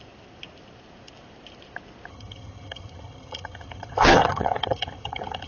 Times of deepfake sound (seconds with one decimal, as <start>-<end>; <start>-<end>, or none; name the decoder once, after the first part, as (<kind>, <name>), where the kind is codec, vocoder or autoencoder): 2.1-5.5 (vocoder, HiFi-GAN)